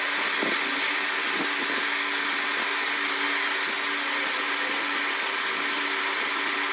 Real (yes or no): yes